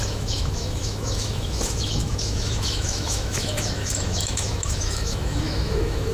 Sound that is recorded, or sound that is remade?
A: remade